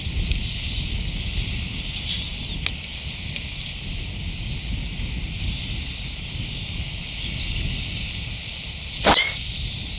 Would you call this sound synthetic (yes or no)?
no